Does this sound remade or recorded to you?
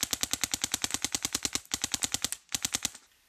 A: recorded